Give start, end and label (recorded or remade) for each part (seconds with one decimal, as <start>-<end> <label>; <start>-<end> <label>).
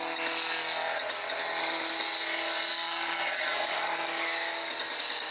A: 0.0-2.7 recorded; 2.7-4.7 remade; 4.7-5.3 recorded